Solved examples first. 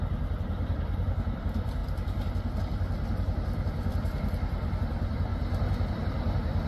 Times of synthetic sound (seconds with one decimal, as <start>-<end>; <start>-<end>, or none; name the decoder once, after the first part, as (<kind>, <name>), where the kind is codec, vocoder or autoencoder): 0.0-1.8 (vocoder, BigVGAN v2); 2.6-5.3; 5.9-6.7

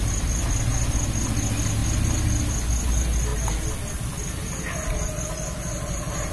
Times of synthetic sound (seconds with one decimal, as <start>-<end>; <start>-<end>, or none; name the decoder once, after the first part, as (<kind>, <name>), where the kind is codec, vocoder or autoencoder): none

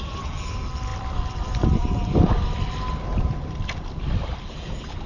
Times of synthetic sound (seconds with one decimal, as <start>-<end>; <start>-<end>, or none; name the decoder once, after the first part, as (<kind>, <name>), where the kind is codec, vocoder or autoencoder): 0.9-4.0 (vocoder, BigVGAN v2)

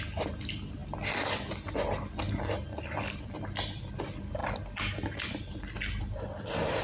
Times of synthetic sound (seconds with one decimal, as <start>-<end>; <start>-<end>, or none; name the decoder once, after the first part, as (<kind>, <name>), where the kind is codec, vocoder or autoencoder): none

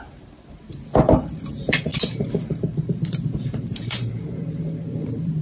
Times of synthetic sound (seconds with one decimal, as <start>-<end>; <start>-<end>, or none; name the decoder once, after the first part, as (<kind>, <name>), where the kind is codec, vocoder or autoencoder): 0.0-5.4 (vocoder, BigVGAN v2)

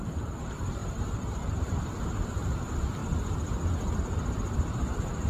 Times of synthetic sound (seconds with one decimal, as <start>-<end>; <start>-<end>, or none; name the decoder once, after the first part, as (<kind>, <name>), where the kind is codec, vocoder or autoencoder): 0.0-3.0 (vocoder, BigVGAN v2); 4.0-5.3